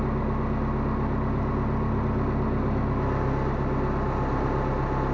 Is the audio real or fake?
real